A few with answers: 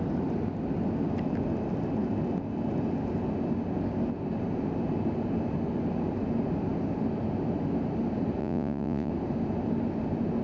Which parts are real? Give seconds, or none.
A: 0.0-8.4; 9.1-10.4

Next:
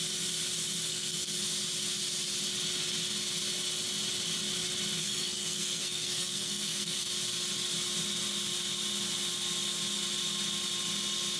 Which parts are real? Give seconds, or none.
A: 0.0-0.9; 1.4-5.0; 7.1-11.4